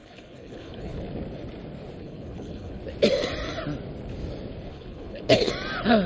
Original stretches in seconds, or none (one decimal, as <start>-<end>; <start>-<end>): 1.0-2.0; 2.8-4.7; 5.5-6.1